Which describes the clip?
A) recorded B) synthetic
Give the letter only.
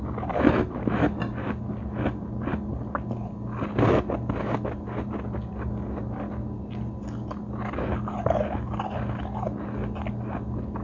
A